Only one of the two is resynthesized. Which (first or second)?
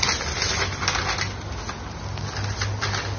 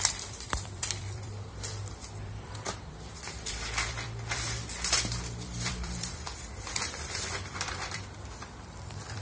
second